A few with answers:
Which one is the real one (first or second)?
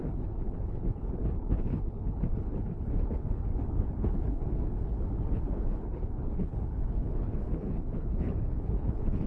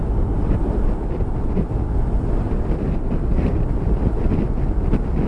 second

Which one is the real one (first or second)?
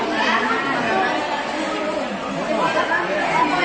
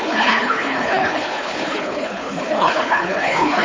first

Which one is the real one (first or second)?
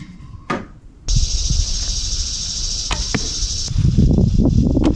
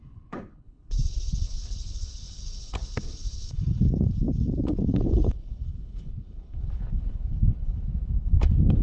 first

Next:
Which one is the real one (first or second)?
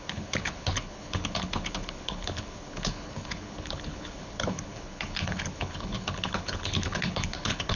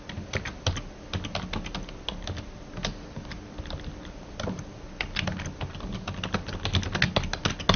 second